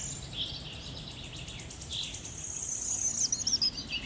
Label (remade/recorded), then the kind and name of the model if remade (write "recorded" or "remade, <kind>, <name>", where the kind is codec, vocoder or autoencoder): recorded